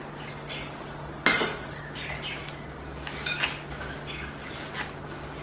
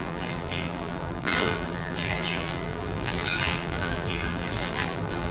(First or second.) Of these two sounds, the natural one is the first